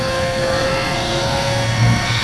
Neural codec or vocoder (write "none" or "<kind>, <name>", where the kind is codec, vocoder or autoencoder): codec, SNAC